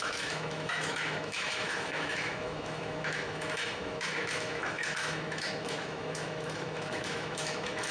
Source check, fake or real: fake